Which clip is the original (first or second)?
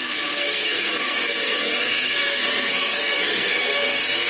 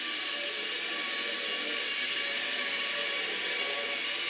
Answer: second